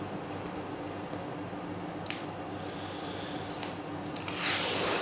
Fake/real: real